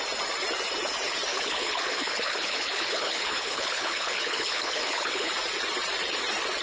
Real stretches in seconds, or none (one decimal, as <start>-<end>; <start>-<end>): 0.0-1.3; 5.3-6.6

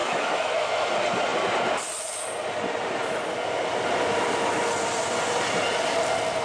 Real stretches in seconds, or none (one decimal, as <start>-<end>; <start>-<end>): 0.9-6.4

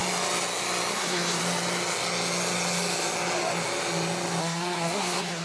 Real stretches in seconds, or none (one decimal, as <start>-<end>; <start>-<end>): 0.0-0.9; 1.4-4.4